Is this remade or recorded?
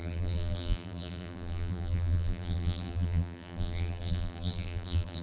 remade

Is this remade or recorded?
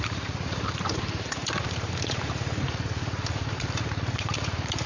remade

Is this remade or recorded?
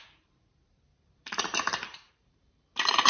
remade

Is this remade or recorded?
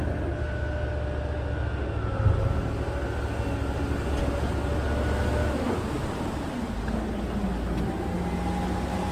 recorded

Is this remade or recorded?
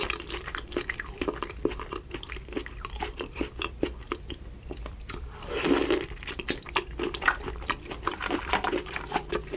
remade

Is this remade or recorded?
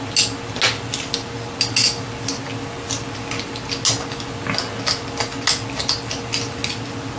recorded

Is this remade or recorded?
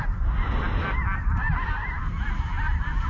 recorded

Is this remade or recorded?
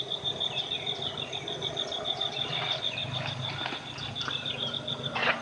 recorded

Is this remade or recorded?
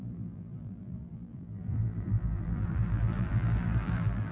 remade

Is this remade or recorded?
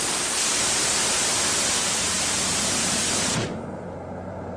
remade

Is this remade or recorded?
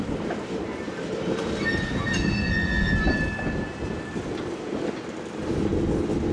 recorded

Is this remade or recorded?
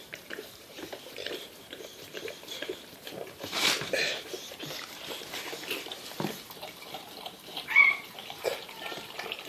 remade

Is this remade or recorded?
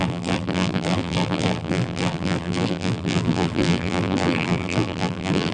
remade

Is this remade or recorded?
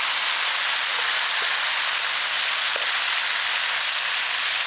recorded